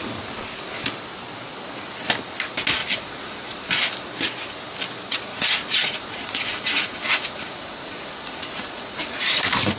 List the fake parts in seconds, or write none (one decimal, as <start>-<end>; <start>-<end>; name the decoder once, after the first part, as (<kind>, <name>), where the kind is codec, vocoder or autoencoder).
2.8-3.8 (vocoder, Vocos); 5.3-9.4